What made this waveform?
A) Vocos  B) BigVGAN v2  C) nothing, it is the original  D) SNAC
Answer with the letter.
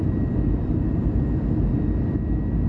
C